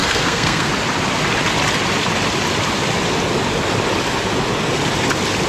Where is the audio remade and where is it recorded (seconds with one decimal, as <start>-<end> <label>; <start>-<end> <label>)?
0.0-0.7 remade; 0.7-5.5 recorded